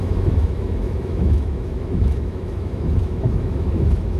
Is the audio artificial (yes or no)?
yes